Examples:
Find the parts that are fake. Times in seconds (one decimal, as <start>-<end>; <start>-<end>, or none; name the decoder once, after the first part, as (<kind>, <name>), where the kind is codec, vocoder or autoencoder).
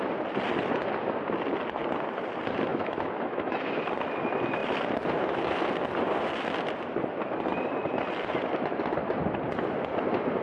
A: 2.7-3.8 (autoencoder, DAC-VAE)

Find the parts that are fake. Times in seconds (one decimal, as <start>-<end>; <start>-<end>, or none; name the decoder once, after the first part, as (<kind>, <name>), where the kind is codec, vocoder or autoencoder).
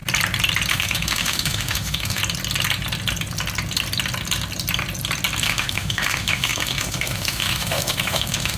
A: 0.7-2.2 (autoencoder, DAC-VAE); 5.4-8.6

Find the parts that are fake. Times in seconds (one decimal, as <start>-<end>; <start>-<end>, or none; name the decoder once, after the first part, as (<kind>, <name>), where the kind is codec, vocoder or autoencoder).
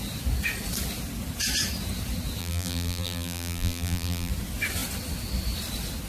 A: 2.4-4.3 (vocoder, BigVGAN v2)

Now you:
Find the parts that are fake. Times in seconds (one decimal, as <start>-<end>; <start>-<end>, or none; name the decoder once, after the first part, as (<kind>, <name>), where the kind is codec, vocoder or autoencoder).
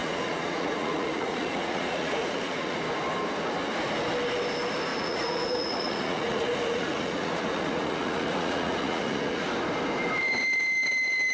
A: 0.0-2.8 (vocoder, Vocos); 4.9-9.5